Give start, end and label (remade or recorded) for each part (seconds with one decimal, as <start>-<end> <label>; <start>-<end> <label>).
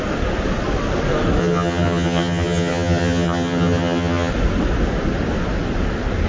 0.0-1.4 recorded; 1.4-4.3 remade; 4.3-6.3 recorded